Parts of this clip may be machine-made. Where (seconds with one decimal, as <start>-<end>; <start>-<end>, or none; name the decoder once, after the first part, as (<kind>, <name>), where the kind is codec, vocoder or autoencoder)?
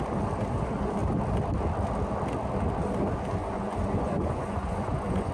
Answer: 3.4-5.3 (vocoder, Vocos)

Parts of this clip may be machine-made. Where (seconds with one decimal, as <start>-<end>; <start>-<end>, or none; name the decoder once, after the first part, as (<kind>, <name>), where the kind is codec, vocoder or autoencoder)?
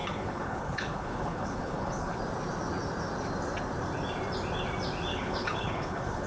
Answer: 0.0-2.2 (codec, HILCodec); 5.1-6.3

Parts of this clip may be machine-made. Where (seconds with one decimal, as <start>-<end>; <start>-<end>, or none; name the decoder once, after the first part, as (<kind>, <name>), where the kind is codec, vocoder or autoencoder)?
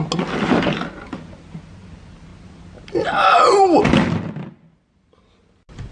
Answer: none